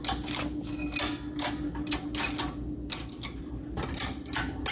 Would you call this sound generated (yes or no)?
no